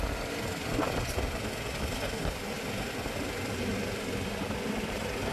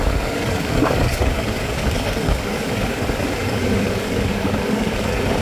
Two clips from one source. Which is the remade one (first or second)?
second